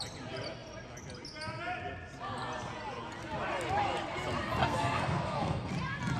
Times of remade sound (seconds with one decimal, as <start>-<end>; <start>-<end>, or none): 4.6-5.7

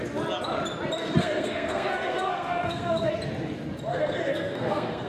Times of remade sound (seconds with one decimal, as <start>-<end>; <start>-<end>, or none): 1.2-3.1; 3.9-5.1

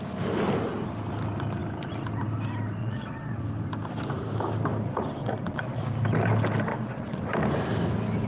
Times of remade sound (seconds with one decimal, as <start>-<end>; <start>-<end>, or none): 2.8-3.4; 5.2-5.8; 6.7-7.2

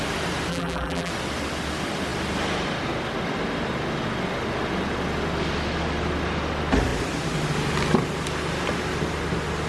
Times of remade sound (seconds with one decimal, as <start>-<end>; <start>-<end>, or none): 0.5-1.1

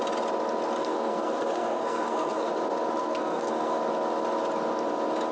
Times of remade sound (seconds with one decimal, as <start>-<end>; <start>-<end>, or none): 0.8-2.5; 3.0-3.8

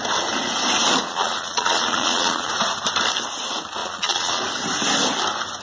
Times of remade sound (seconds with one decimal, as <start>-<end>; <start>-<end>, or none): 1.0-2.5; 3.8-4.4

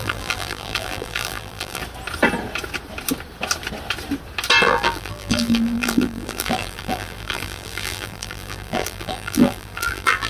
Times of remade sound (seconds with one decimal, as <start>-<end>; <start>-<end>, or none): 0.0-1.8; 4.6-10.3